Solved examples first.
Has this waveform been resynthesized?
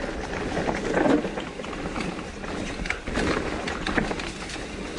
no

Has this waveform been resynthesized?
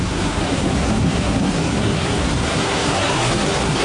yes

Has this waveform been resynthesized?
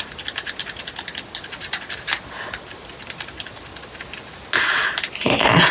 no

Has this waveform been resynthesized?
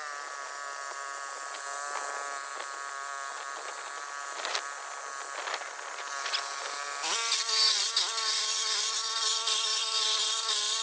no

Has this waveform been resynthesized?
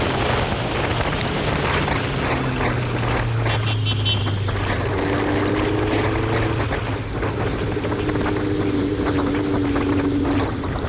no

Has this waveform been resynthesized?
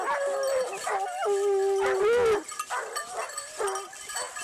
no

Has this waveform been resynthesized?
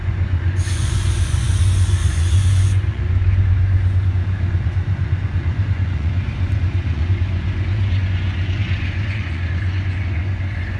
yes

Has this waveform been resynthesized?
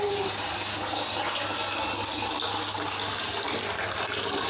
no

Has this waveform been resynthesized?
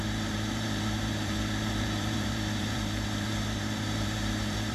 yes